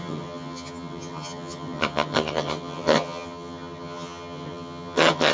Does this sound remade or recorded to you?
remade